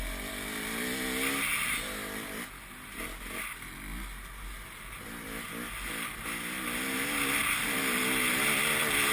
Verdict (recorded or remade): recorded